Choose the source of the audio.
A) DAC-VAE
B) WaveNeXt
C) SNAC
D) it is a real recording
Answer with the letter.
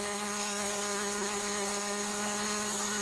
C